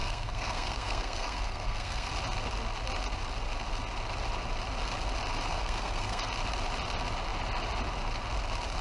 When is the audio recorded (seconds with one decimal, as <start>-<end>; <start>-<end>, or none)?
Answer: 2.1-5.5; 6.3-8.8